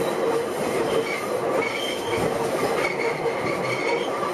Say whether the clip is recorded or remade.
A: recorded